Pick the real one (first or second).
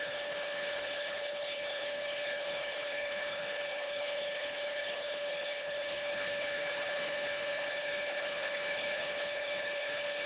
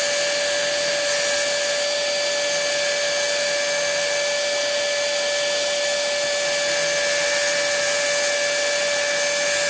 second